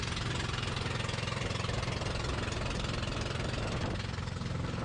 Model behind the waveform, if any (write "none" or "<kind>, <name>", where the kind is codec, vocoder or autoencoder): none